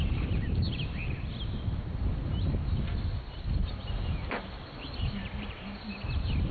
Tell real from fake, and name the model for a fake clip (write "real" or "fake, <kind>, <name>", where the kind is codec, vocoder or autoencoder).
fake, vocoder, BigVGAN v2